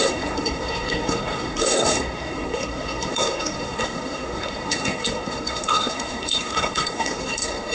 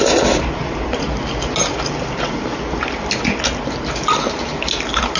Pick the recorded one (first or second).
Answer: second